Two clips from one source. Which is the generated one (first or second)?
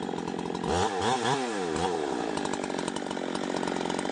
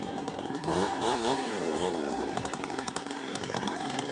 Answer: second